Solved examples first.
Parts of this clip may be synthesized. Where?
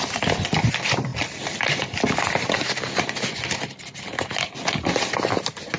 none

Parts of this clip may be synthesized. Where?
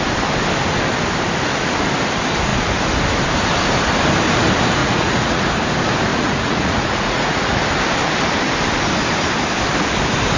4.8-5.4 (vocoder, Vocos); 6.1-7.6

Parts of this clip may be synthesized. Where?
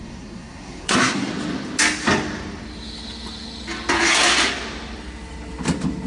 0.0-1.3 (codec, SNAC)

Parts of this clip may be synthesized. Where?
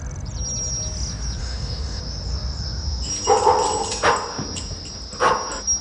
1.4-2.0 (autoencoder, DAC-VAE)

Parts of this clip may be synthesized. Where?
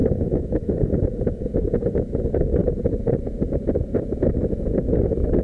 0.0-1.7 (vocoder, BigVGAN v2); 2.6-3.1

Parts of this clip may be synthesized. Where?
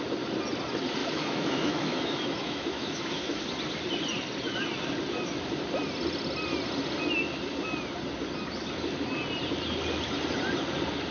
1.0-3.4 (autoencoder, DAC-VAE)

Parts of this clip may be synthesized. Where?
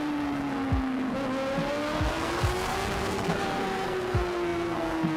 0.0-1.1 (codec, SNAC); 1.6-5.2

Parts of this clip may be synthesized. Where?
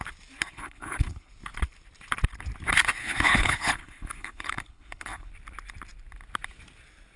0.5-1.3 (codec, HILCodec); 3.0-5.3